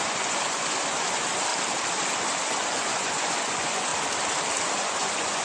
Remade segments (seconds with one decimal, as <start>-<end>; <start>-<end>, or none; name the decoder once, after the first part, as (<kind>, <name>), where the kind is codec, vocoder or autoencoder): 0.0-1.5 (vocoder, Vocos); 2.2-3.9; 4.8-5.4